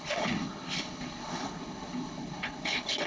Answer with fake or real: fake